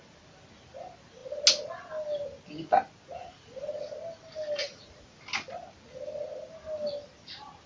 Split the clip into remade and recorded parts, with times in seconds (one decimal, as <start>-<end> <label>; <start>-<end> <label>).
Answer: 0.0-3.2 recorded; 3.2-3.7 remade; 3.7-4.6 recorded; 4.6-5.2 remade; 5.2-7.7 recorded